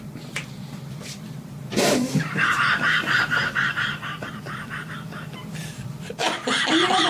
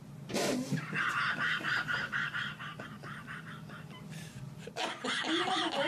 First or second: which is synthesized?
first